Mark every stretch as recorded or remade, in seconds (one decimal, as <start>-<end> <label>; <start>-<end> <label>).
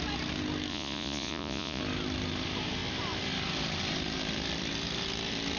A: 0.0-0.7 recorded; 0.7-1.8 remade; 1.8-5.6 recorded